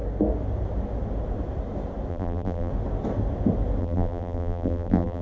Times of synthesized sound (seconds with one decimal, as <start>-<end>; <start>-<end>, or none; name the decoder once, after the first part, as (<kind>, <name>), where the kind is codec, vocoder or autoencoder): 2.1-2.7 (vocoder, BigVGAN v2); 3.8-5.2